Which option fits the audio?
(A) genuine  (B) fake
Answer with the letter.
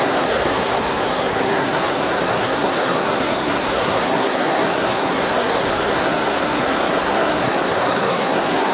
B